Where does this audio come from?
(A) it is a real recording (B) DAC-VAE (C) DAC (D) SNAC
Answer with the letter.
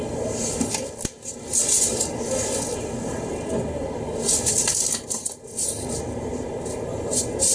A